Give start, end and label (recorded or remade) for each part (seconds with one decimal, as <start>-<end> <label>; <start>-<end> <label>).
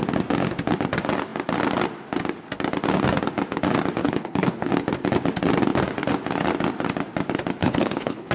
0.0-4.0 recorded; 4.0-4.7 remade; 4.7-7.6 recorded; 7.6-8.3 remade